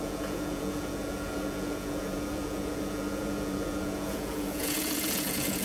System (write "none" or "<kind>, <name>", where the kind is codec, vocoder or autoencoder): vocoder, Vocos